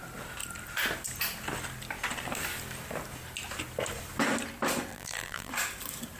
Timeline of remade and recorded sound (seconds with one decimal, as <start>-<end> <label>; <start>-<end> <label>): 0.0-4.9 recorded; 4.9-5.5 remade; 5.5-6.2 recorded